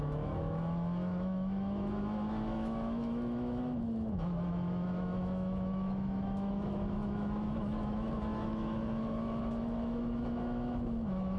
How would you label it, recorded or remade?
remade